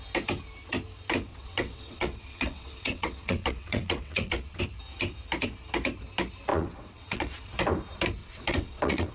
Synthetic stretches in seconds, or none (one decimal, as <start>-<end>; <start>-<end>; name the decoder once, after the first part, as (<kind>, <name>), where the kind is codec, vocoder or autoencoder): 1.3-4.6 (vocoder, WaveNeXt); 6.5-7.4; 8.2-9.1